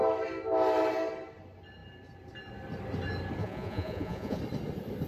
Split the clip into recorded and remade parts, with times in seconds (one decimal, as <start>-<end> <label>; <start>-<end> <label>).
0.0-3.4 recorded; 3.4-4.4 remade; 4.4-5.1 recorded